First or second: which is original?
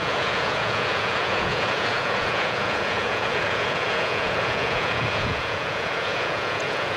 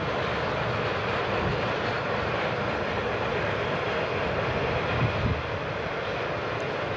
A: second